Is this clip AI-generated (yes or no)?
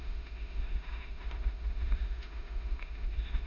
yes